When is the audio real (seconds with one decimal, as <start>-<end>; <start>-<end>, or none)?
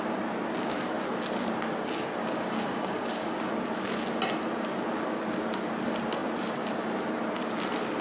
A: 0.0-2.2; 3.5-8.0